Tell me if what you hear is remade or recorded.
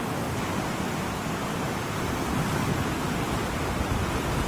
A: recorded